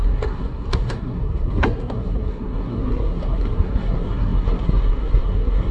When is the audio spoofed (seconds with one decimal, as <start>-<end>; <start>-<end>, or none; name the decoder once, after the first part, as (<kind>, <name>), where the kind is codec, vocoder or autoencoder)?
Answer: 0.0-5.7 (codec, SNAC)